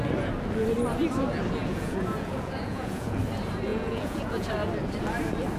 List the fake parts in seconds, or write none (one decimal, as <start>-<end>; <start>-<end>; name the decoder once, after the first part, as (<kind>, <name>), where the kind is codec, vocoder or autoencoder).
1.6-3.2 (vocoder, Vocos); 3.7-4.5